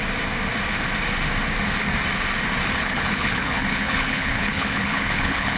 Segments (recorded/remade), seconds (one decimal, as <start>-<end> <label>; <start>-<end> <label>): 0.0-2.8 recorded; 2.8-5.6 remade